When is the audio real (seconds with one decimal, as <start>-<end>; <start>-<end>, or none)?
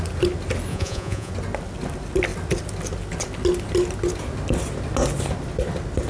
0.0-0.7; 1.3-6.1